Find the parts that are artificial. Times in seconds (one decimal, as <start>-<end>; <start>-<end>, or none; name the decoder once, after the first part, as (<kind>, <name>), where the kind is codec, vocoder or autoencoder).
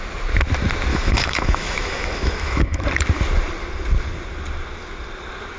0.9-2.8 (autoencoder, DAC-VAE)